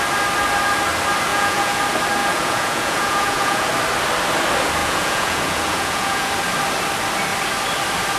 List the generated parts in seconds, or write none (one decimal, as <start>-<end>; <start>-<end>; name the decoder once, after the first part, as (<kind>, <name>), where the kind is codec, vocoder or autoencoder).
1.3-1.8 (vocoder, Vocos); 2.2-3.7; 4.8-6.3